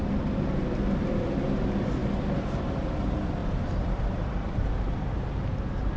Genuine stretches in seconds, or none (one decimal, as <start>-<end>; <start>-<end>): 0.0-3.4; 5.1-6.0